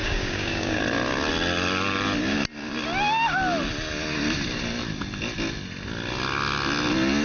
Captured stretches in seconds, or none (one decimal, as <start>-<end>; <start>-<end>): 0.8-7.2